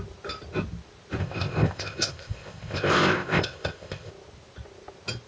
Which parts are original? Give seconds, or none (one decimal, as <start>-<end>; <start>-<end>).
0.0-1.2; 4.1-5.3